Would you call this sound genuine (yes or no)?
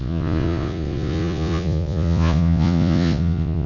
no